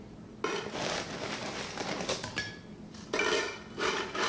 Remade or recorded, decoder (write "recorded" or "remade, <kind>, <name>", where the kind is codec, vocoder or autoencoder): recorded